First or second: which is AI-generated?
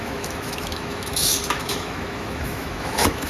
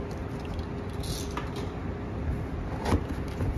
first